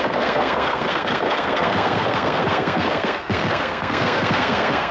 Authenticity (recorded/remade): remade